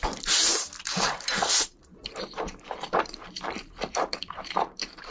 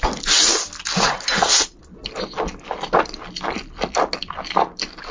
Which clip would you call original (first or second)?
second